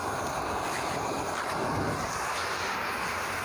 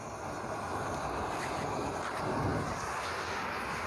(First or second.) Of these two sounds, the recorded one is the second